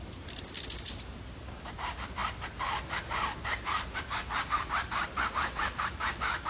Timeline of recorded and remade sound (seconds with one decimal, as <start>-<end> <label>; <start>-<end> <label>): 0.0-6.5 recorded